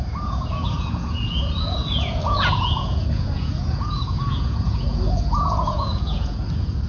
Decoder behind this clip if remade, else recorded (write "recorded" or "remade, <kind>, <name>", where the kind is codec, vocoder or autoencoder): remade, vocoder, Vocos